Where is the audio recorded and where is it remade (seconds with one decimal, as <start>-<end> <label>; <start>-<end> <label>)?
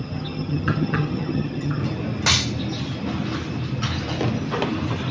0.0-1.8 remade; 1.8-5.1 recorded